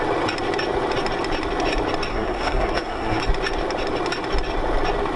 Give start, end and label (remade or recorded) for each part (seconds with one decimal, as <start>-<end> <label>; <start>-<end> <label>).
0.0-2.1 recorded; 2.1-3.2 remade; 3.2-5.2 recorded